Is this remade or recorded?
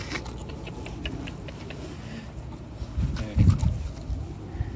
recorded